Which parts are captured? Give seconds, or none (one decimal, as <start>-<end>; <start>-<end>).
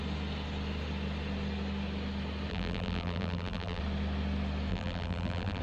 0.0-2.5; 3.8-4.7